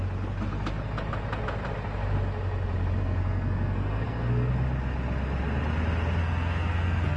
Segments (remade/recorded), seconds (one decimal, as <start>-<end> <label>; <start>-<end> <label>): 0.0-3.0 recorded; 3.0-4.5 remade; 4.5-6.2 recorded; 6.2-7.2 remade